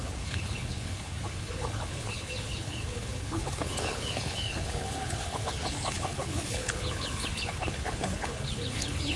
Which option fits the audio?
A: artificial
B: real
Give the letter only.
A